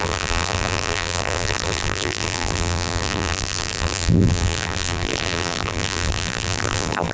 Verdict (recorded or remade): remade